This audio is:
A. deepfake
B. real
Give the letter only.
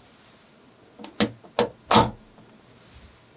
B